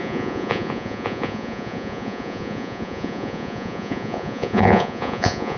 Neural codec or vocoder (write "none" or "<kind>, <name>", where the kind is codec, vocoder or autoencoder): vocoder, Vocos